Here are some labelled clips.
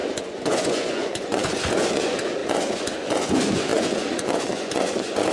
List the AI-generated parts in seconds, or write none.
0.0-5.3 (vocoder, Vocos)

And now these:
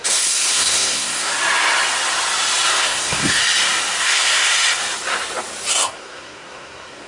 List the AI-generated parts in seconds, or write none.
0.0-1.3 (codec, SNAC); 2.7-3.4; 4.0-4.5; 5.7-7.1

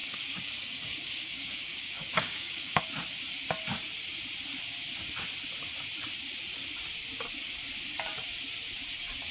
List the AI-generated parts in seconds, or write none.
0.0-2.8 (codec, DAC)

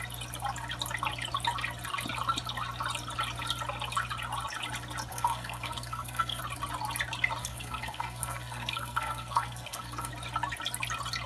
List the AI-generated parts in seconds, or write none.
5.1-6.4 (codec, SNAC); 7.4-10.1

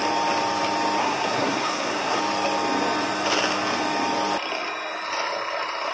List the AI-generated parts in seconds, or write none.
1.0-2.2 (codec, SNAC)

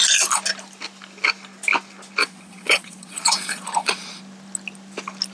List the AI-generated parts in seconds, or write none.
2.2-4.2 (vocoder, Vocos)

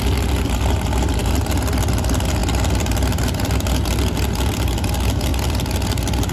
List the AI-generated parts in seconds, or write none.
5.3-6.3 (vocoder, BigVGAN v2)

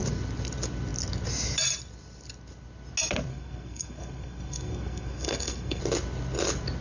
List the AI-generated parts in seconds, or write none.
3.3-5.8 (codec, SNAC)